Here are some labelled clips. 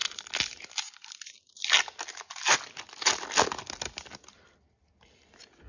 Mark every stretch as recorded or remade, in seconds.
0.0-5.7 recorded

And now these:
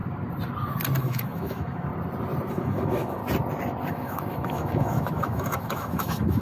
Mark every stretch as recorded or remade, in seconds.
0.0-1.0 recorded; 1.0-1.9 remade; 1.9-2.5 recorded; 2.5-3.2 remade; 3.2-3.9 recorded; 3.9-6.4 remade

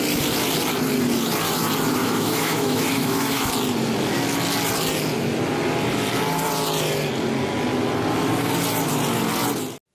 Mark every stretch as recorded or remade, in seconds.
0.0-2.0 recorded; 2.0-3.5 remade; 3.5-9.9 recorded

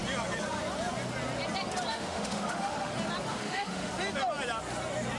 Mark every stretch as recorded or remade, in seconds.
0.0-1.9 recorded; 1.9-2.9 remade; 2.9-3.3 recorded; 3.3-3.9 remade; 3.9-5.2 recorded

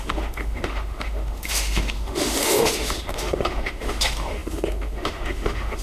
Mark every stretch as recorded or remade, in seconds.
0.0-5.8 remade